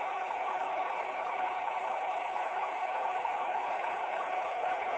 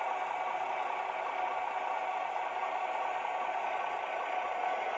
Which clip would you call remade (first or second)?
first